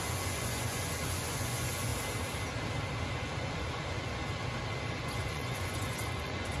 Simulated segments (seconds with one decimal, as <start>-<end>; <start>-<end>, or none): 0.0-1.9; 3.0-4.2; 4.9-6.6